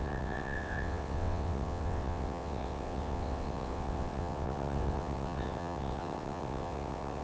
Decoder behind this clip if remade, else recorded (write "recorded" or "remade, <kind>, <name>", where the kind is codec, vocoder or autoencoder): remade, vocoder, WaveNeXt